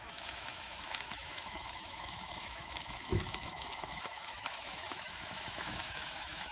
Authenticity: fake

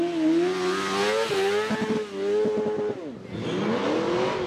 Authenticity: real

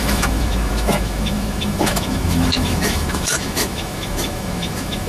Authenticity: fake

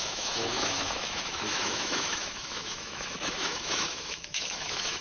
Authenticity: fake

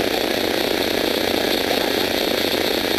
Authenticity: real